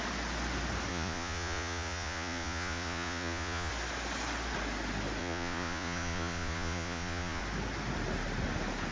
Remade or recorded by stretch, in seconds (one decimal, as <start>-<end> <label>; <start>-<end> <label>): 0.0-0.9 recorded; 0.9-3.7 remade; 3.7-5.2 recorded; 5.2-7.4 remade; 7.4-8.9 recorded